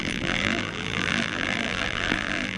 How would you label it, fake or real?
fake